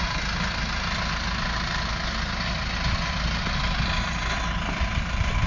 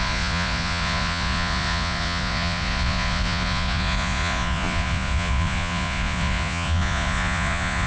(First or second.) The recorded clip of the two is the first